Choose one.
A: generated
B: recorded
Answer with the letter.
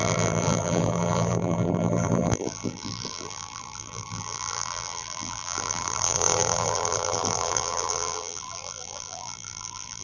A